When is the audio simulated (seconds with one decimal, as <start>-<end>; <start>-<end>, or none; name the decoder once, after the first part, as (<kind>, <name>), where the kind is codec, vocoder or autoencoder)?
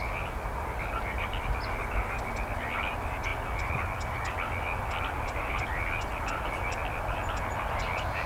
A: none